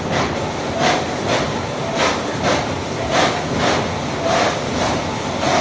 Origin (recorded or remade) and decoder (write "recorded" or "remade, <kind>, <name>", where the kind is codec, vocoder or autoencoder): recorded